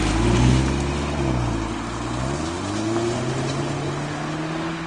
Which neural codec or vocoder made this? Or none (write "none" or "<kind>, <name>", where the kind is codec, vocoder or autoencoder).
none